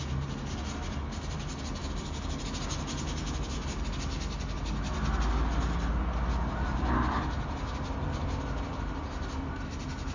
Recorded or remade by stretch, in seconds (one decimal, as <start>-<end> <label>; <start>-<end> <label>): 0.0-10.1 recorded